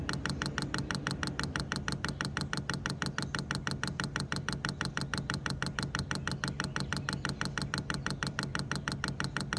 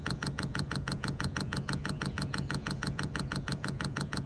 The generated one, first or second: second